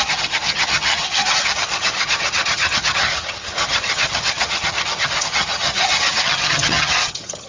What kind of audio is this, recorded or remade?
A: remade